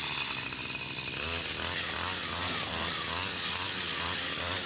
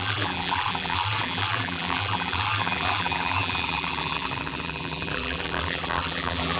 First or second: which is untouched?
first